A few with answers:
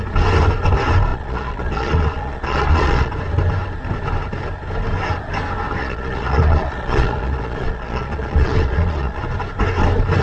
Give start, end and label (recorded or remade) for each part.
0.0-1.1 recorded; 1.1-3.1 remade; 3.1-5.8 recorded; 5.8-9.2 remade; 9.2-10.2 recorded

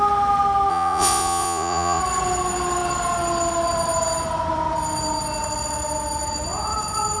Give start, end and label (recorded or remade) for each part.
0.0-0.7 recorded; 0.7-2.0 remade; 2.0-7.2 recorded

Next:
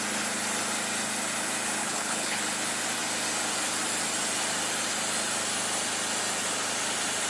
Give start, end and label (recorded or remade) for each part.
0.0-1.8 recorded; 1.8-2.4 remade; 2.4-7.3 recorded

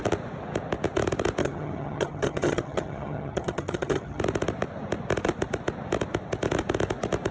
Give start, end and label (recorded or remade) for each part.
0.0-1.4 recorded; 1.4-4.2 remade; 4.2-7.3 recorded

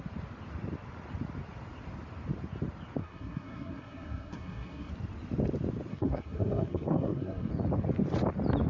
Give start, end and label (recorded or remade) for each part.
0.0-3.0 recorded; 3.0-4.9 remade; 4.9-5.9 recorded; 5.9-7.5 remade; 7.5-8.7 recorded